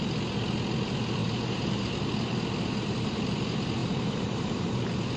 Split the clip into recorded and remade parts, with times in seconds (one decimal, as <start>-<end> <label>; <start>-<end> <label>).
0.0-1.2 recorded; 1.2-1.9 remade; 1.9-3.8 recorded; 3.8-4.8 remade; 4.8-5.2 recorded